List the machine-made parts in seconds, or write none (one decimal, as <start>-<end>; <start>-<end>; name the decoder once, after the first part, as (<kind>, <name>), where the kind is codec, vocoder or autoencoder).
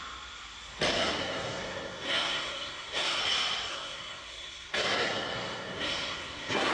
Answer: 0.9-3.2 (codec, SNAC); 3.7-6.7